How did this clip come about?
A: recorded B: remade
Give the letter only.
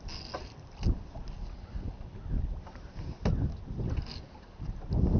A